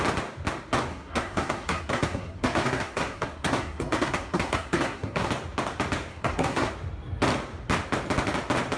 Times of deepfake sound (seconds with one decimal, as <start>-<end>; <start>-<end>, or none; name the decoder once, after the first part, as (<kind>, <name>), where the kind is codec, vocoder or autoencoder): 0.9-5.3 (codec, SNAC); 6.1-6.7